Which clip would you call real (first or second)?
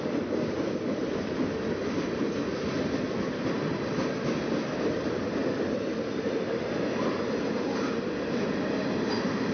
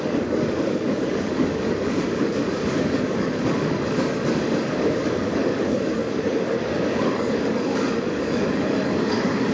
first